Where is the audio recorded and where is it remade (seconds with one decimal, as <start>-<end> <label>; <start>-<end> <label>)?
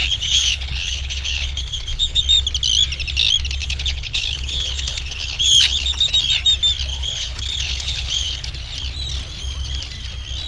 0.0-2.2 remade; 2.2-3.6 recorded; 3.6-6.1 remade; 6.1-6.9 recorded; 6.9-8.5 remade; 8.5-10.5 recorded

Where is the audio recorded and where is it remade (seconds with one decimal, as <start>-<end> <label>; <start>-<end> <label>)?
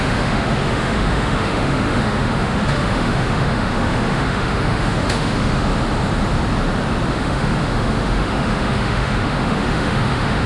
0.0-5.7 remade; 5.7-7.1 recorded; 7.1-10.5 remade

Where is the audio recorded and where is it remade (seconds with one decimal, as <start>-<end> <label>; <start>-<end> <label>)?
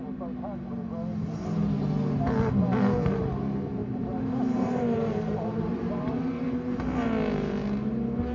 0.0-3.8 recorded; 3.8-6.2 remade; 6.2-8.3 recorded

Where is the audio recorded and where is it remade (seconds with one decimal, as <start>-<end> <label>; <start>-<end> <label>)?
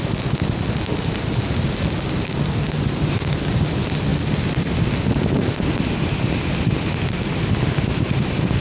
0.0-8.6 recorded